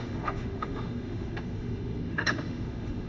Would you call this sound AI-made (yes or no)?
yes